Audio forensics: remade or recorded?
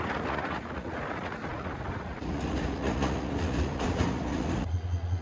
remade